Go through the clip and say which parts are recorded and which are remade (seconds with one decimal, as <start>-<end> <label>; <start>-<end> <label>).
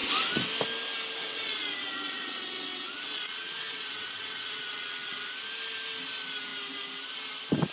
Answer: 0.0-1.2 recorded; 1.2-5.3 remade; 5.3-7.7 recorded